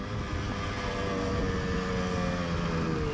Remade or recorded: recorded